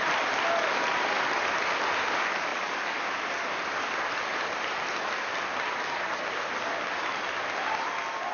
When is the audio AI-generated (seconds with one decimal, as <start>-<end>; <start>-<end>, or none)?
none